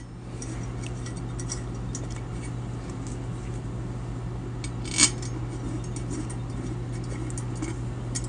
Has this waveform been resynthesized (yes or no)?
no